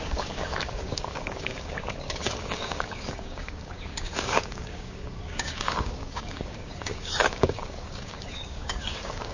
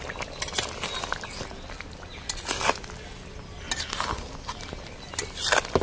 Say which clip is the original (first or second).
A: second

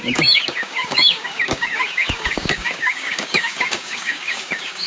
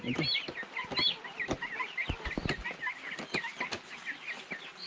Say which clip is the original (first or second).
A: second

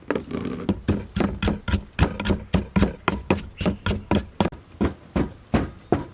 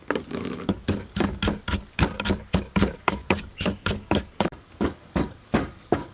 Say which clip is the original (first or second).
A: first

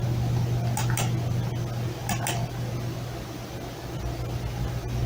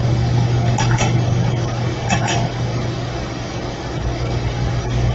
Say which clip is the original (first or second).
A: first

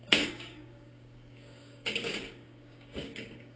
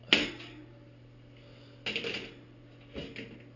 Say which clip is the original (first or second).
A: second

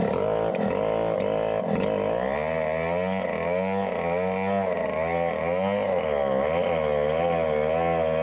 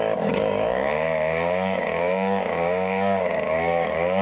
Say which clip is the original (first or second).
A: first